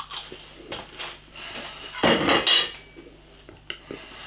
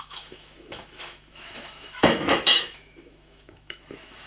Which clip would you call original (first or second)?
first